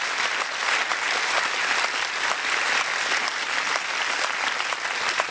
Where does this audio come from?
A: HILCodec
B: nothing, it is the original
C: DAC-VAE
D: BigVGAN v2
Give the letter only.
B